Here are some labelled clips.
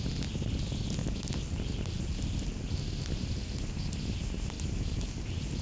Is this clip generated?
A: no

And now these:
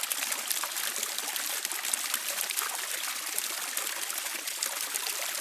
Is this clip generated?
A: no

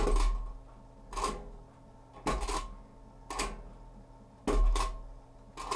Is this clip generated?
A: no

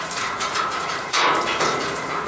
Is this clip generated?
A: yes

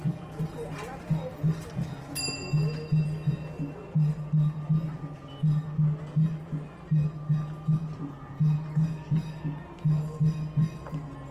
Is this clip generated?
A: no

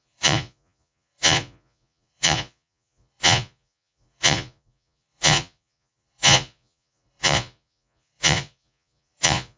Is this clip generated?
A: yes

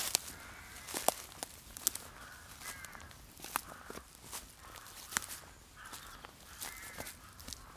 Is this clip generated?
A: no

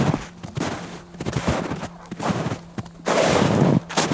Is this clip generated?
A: no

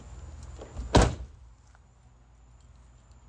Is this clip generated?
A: no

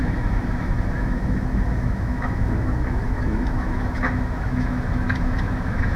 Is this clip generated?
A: yes